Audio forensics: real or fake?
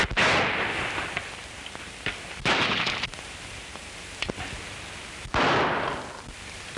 real